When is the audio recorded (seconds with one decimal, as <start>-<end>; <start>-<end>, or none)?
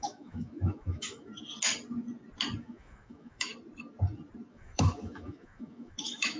1.3-2.6; 3.5-4.5